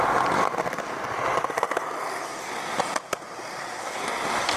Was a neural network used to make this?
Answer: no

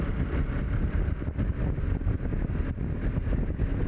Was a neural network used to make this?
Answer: no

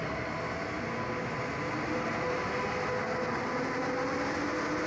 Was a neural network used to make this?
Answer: no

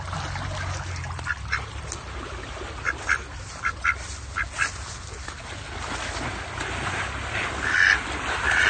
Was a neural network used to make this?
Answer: no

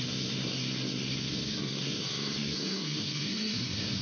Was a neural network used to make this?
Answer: yes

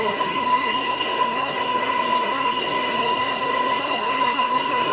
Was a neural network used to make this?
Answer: yes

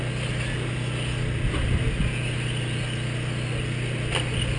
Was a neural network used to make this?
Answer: no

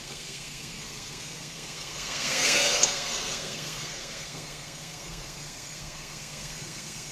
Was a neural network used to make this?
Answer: yes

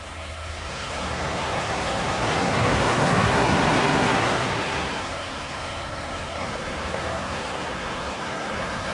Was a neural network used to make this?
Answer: yes